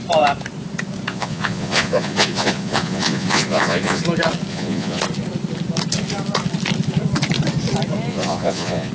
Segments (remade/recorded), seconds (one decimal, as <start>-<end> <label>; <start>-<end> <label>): 0.0-1.1 recorded; 1.1-4.0 remade; 4.0-4.5 recorded; 4.5-5.0 remade; 5.0-8.1 recorded; 8.1-8.9 remade

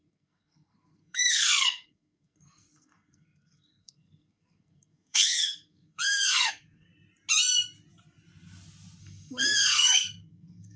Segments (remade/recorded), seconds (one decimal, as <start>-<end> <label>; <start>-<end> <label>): 0.0-6.9 remade; 6.9-9.0 recorded; 9.0-10.8 remade

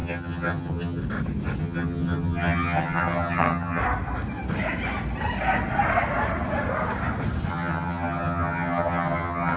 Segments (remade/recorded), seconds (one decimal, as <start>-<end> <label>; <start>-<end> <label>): 0.0-1.0 remade; 1.0-1.6 recorded; 1.6-3.8 remade; 3.8-7.5 recorded; 7.5-9.6 remade

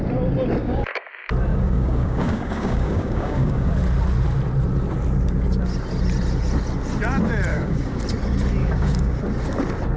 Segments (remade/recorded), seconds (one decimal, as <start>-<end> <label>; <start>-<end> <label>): 0.0-0.6 recorded; 0.6-1.1 remade; 1.1-1.5 recorded; 1.5-3.7 remade; 3.7-7.5 recorded; 7.5-8.0 remade; 8.0-8.6 recorded; 8.6-9.2 remade; 9.2-10.0 recorded

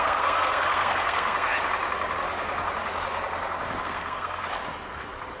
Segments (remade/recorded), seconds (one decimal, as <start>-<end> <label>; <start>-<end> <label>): 0.0-1.5 remade; 1.5-3.8 recorded; 3.8-4.4 remade; 4.4-5.4 recorded

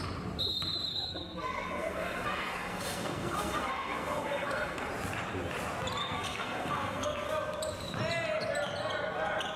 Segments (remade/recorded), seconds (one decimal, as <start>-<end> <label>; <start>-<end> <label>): 0.0-0.9 recorded; 0.9-4.9 remade; 4.9-6.0 recorded; 6.0-7.3 remade; 7.3-9.6 recorded

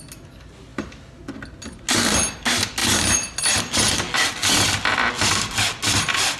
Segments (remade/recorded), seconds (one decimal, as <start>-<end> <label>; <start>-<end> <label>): 0.0-6.4 recorded

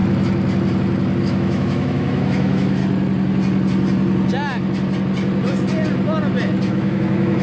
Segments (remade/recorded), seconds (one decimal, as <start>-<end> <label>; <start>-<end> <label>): 0.0-1.2 recorded; 1.2-2.8 remade; 2.8-6.7 recorded; 6.7-7.4 remade